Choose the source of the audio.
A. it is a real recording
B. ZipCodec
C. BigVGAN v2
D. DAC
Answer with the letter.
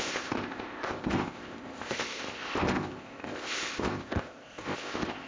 B